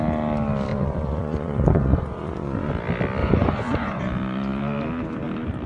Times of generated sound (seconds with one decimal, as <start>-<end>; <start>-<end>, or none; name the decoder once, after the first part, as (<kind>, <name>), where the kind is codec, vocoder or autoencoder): 0.7-2.7 (vocoder, Vocos); 3.2-4.0